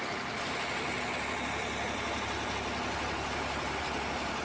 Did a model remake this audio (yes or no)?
no